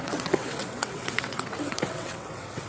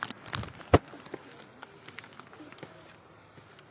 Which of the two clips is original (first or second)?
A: second